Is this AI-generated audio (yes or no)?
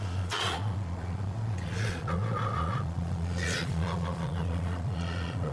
yes